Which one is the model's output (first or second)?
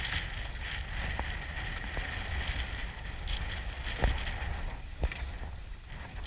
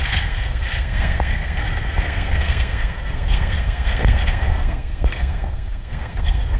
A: second